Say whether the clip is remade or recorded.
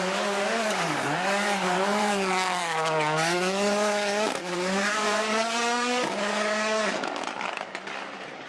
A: remade